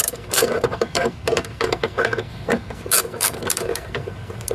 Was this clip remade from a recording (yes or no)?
yes